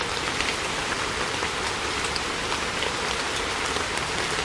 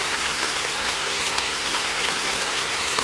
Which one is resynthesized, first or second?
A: second